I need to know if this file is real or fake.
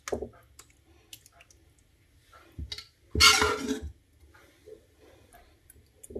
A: real